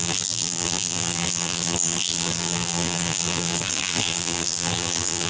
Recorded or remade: remade